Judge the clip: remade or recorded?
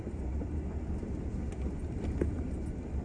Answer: recorded